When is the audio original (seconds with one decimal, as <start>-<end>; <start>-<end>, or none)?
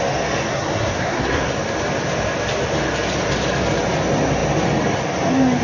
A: 0.0-0.5; 1.5-5.6